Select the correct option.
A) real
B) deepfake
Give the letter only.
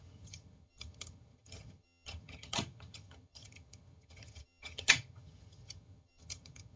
B